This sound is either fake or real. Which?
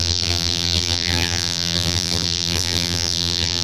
fake